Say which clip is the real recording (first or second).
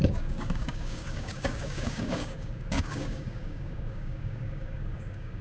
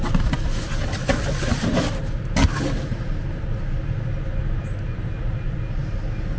second